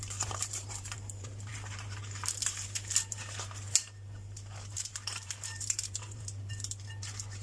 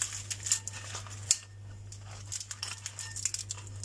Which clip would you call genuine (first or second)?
second